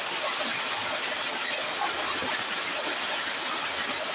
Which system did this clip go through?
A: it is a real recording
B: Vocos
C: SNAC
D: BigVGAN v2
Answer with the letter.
A